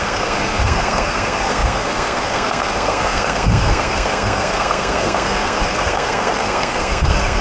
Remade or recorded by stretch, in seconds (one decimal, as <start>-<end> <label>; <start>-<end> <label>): 0.0-7.4 remade